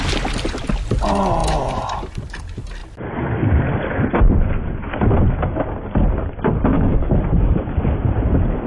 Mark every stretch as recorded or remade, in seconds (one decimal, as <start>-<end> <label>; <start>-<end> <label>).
0.0-6.7 recorded; 6.7-7.2 remade; 7.2-8.7 recorded